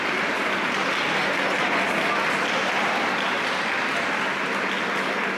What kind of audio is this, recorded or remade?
recorded